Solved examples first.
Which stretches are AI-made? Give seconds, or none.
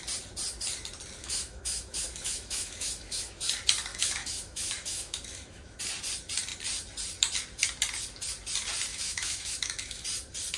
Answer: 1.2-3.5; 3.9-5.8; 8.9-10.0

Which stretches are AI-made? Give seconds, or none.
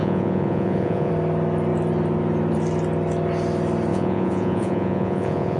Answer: 0.0-1.1; 3.9-5.6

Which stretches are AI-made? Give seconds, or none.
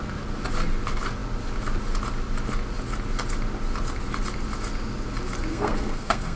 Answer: 5.5-6.4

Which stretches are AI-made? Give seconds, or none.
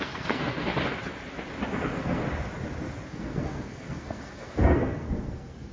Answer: 0.0-0.7; 1.7-2.2; 3.1-5.7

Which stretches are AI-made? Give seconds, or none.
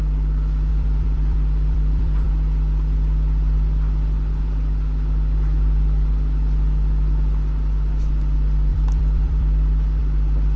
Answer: 0.7-2.3; 8.7-10.0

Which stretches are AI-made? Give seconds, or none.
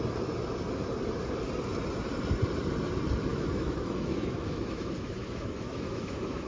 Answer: 3.3-6.5